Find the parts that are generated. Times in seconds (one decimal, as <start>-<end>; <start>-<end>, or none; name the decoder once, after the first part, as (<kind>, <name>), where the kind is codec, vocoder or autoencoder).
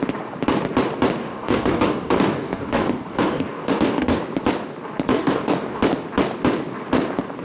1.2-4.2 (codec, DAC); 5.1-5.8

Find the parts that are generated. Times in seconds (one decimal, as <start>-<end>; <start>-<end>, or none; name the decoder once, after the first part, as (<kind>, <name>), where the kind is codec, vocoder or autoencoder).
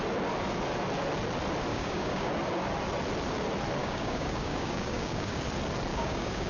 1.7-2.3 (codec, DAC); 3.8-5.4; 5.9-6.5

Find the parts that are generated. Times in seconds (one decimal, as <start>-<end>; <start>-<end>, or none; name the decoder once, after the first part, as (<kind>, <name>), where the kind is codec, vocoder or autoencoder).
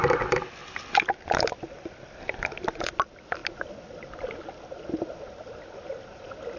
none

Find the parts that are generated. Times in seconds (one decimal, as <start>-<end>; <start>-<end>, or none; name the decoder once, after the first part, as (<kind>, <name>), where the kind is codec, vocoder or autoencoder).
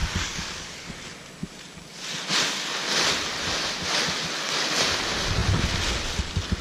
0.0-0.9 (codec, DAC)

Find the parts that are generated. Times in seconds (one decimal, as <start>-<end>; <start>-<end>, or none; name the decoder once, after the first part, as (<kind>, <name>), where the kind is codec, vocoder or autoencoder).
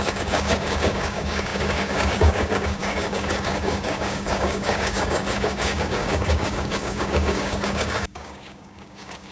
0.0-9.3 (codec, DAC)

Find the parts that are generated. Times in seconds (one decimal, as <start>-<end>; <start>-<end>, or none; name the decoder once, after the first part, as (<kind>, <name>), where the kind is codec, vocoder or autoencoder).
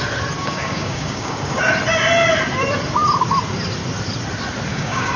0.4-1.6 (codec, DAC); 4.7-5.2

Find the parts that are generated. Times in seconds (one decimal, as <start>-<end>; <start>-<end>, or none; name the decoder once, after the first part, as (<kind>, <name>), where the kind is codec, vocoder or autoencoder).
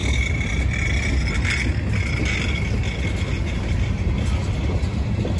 none